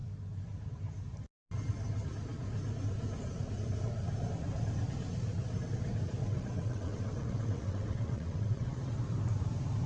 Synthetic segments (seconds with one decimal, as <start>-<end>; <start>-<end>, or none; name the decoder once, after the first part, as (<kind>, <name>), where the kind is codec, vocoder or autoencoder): 6.2-9.0 (vocoder, WaveNeXt)